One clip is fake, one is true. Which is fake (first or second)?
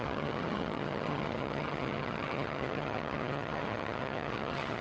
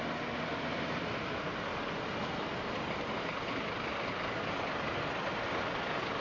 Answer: first